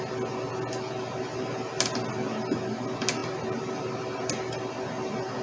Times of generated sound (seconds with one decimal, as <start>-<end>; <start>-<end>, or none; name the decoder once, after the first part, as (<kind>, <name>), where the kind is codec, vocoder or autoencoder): 3.2-4.2 (vocoder, BigVGAN v2)